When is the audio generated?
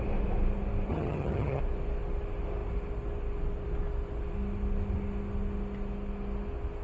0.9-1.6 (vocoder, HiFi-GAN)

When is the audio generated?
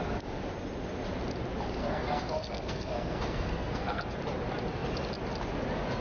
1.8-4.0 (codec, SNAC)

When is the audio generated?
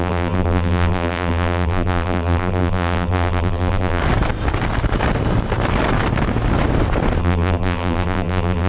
0.0-4.0 (vocoder, BigVGAN v2); 7.2-8.7